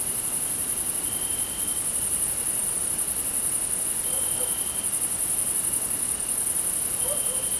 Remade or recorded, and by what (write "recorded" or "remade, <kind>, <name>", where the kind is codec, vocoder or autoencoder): recorded